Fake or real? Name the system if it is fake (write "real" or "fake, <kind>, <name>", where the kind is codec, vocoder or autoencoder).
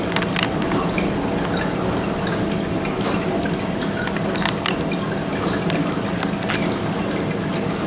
real